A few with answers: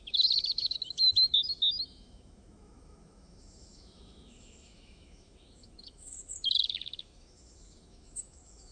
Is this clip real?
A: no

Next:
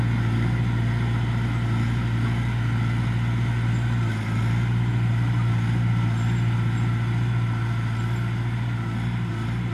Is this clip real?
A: yes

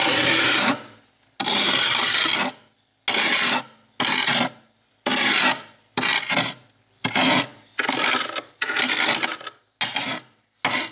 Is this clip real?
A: yes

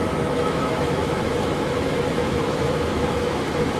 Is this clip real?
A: no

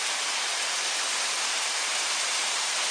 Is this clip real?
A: yes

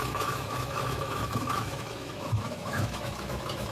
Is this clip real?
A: no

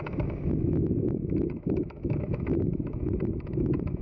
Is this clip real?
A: no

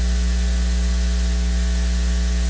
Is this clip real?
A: yes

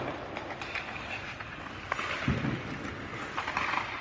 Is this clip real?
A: yes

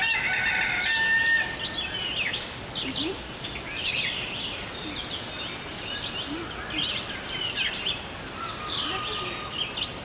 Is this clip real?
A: yes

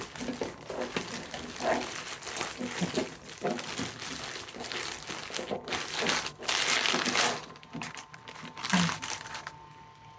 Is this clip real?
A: yes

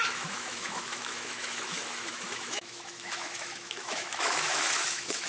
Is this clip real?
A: no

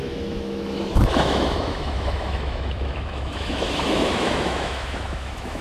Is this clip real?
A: no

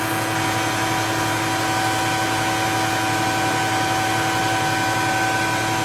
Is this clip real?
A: yes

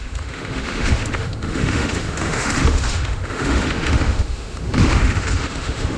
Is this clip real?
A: no